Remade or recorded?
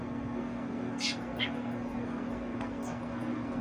remade